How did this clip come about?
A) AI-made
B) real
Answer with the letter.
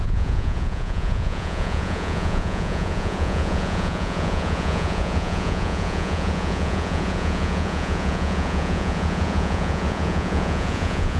A